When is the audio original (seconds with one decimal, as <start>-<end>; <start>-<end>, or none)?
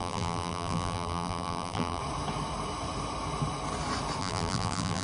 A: 2.0-4.2